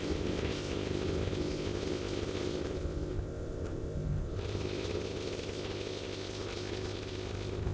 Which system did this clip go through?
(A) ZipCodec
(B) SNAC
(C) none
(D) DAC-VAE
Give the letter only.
A